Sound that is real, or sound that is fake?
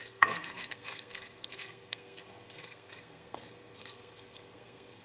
fake